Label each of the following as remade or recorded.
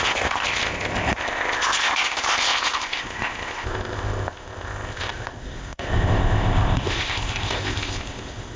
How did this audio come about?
remade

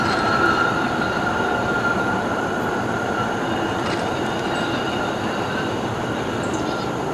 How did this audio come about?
remade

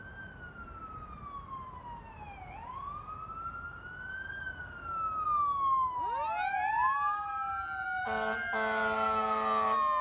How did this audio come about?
recorded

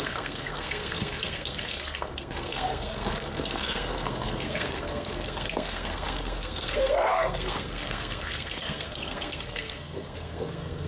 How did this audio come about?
remade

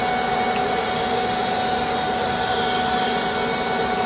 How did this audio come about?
recorded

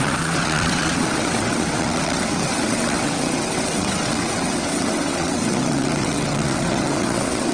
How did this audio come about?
remade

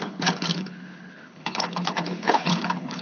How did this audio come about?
remade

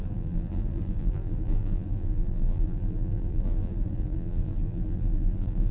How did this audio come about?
remade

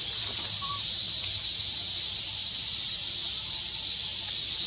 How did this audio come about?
recorded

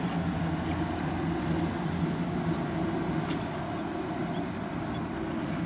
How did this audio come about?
recorded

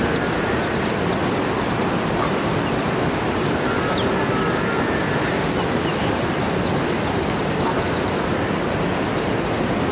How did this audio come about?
recorded